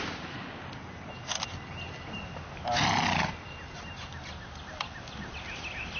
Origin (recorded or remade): recorded